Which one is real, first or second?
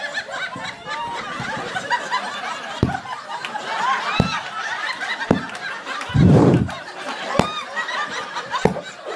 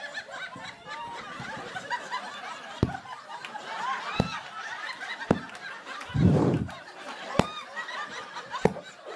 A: first